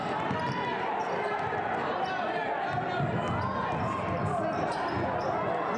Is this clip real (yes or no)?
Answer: yes